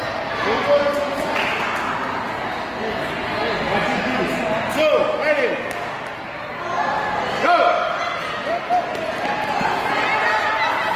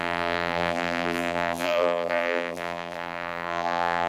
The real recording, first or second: first